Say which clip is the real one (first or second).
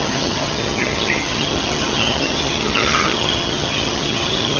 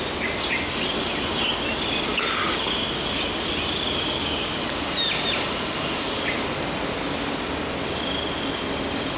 second